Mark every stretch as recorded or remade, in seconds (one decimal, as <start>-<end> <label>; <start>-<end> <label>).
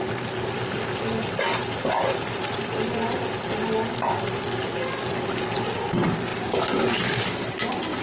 0.0-8.0 recorded